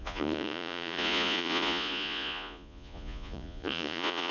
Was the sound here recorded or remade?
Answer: remade